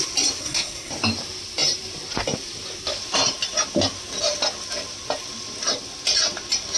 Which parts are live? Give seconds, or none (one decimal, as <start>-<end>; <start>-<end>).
0.0-0.4; 0.9-6.8